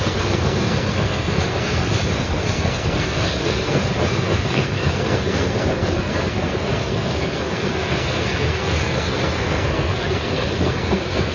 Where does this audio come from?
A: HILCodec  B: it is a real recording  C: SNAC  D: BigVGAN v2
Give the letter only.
C